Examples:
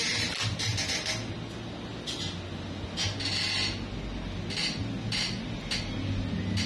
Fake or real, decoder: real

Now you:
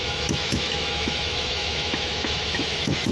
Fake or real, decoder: fake, autoencoder, DAC-VAE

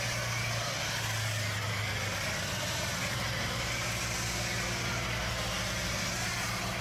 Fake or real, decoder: real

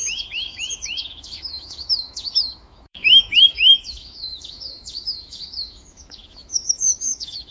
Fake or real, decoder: fake, autoencoder, DAC-VAE